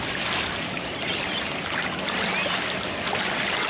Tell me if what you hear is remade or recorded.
recorded